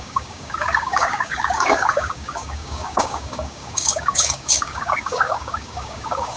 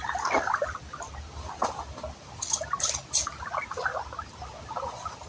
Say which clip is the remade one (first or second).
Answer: first